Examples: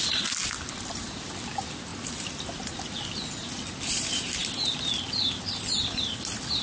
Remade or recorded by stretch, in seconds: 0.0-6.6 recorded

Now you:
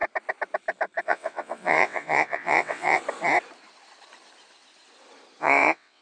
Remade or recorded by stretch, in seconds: 0.0-1.0 recorded; 1.0-3.0 remade; 3.0-5.4 recorded; 5.4-6.0 remade

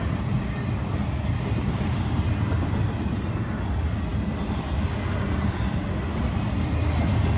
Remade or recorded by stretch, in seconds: 0.0-7.4 recorded

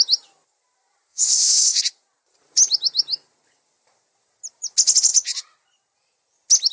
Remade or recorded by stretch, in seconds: 0.0-1.1 recorded; 1.1-1.8 remade; 1.8-6.7 recorded

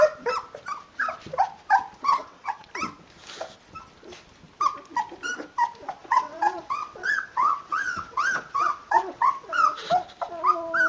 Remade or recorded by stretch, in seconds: 0.0-2.1 recorded; 2.1-2.7 remade; 2.7-6.0 recorded; 6.0-9.9 remade; 9.9-10.9 recorded

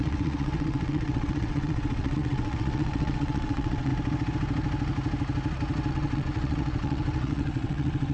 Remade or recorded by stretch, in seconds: 0.0-3.9 remade; 3.9-5.9 recorded; 5.9-8.1 remade

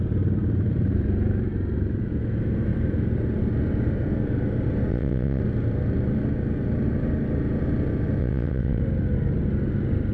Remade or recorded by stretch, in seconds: 0.0-4.9 recorded; 4.9-5.4 remade; 5.4-8.2 recorded; 8.2-8.8 remade; 8.8-10.1 recorded